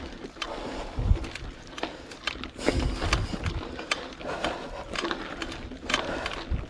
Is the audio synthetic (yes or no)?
no